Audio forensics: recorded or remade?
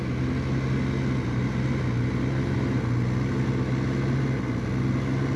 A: recorded